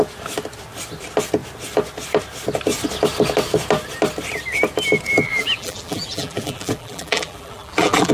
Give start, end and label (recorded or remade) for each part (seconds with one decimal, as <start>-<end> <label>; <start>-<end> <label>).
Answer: 0.0-5.3 recorded; 5.3-8.1 remade